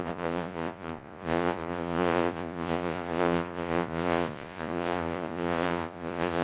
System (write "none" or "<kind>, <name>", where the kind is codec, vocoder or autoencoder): vocoder, Vocos